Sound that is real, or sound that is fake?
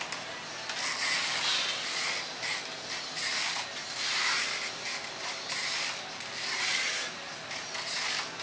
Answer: real